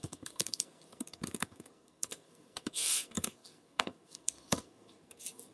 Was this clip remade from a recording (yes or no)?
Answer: yes